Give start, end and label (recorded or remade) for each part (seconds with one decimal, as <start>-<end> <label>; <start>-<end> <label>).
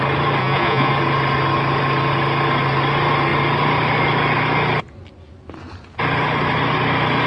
0.0-0.4 recorded; 0.4-0.9 remade; 0.9-7.3 recorded